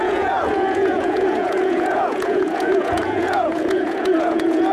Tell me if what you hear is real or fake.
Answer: fake